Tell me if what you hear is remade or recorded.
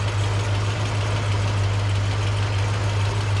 recorded